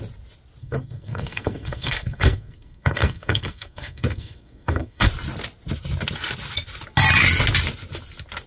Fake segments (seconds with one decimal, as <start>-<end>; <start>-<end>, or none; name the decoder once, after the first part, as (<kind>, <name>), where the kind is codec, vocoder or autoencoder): 0.6-5.1 (codec, SNAC)